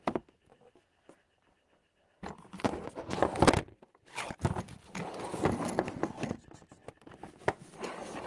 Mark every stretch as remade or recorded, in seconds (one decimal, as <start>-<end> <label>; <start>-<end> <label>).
0.0-8.3 recorded